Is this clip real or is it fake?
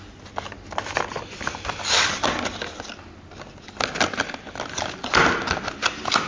real